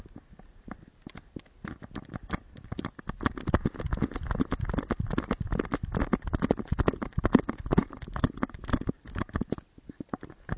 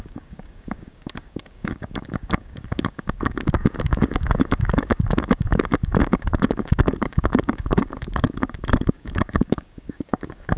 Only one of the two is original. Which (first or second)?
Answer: first